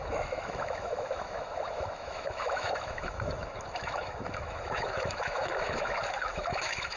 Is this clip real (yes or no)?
no